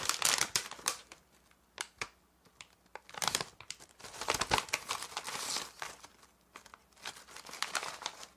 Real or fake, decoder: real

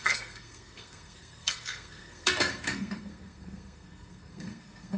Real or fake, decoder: fake, codec, SNAC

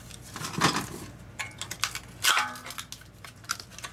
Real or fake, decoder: real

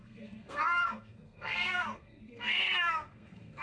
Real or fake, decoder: fake, codec, SNAC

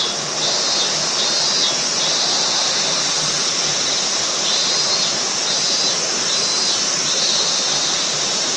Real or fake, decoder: real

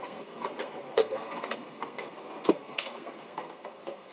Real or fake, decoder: fake, codec, SNAC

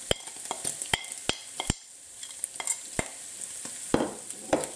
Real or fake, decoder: real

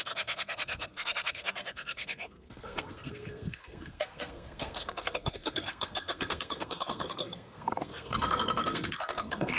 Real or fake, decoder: fake, codec, SNAC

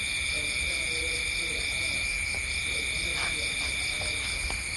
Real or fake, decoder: real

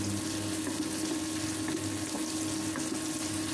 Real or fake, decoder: real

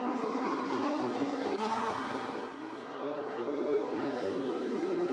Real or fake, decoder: fake, codec, SNAC